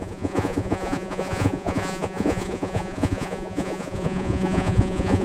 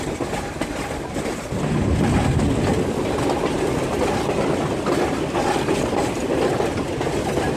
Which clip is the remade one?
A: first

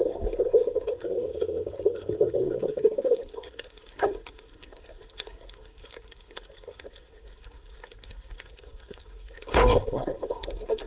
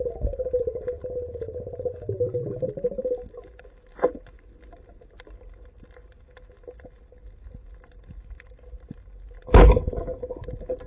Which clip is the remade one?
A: first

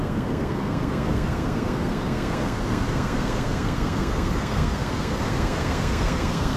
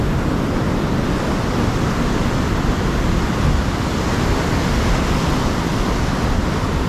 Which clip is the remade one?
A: first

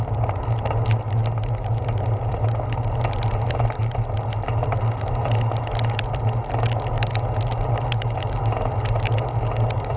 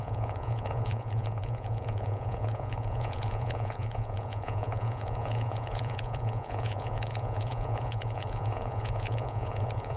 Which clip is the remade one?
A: second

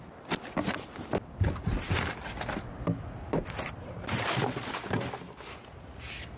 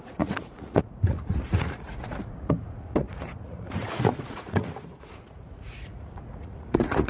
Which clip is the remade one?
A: second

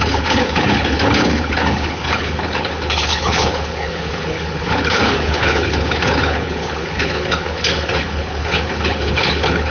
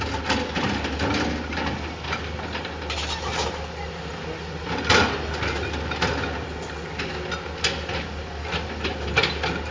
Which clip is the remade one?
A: first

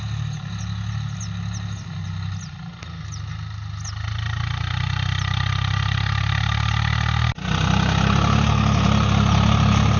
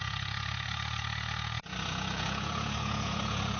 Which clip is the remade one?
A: second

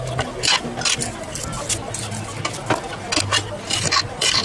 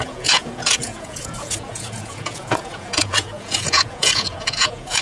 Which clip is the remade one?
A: second